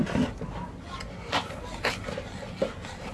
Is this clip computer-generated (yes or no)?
no